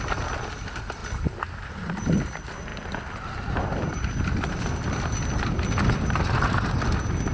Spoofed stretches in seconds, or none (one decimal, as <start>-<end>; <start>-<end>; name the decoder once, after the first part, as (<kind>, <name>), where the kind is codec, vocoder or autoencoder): none